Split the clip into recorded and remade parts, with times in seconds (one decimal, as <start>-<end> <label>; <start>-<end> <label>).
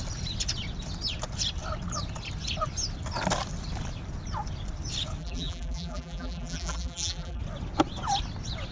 0.0-5.2 recorded; 5.2-7.4 remade; 7.4-8.7 recorded